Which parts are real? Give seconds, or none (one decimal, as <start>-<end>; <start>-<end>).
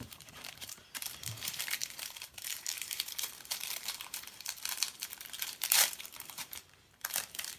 none